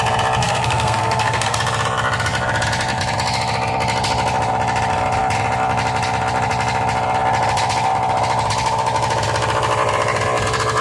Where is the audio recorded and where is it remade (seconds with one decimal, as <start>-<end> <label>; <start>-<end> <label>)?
0.0-0.4 recorded; 0.4-1.6 remade; 1.6-10.8 recorded

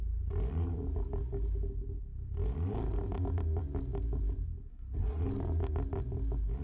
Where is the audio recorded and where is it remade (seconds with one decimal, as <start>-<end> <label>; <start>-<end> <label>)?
0.0-4.7 recorded; 4.7-5.2 remade; 5.2-6.6 recorded

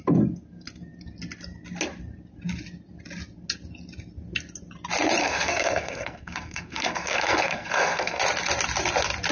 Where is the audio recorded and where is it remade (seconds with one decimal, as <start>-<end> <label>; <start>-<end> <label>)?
0.0-5.2 recorded; 5.2-8.2 remade; 8.2-9.3 recorded

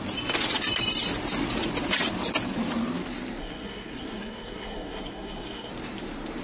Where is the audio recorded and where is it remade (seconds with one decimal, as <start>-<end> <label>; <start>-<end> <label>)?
0.0-3.4 recorded; 3.4-5.7 remade; 5.7-6.4 recorded

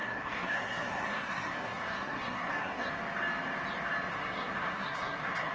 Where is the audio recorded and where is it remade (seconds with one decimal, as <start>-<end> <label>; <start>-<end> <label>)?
0.0-2.9 remade; 2.9-4.1 recorded; 4.1-5.5 remade